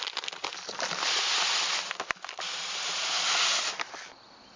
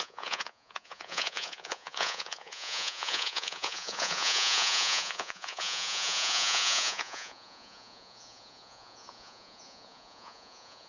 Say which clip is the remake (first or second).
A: second